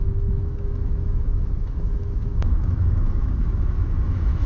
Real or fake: fake